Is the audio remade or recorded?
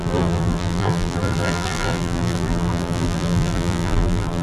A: remade